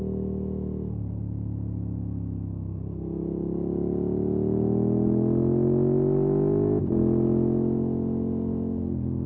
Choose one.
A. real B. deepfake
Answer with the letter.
A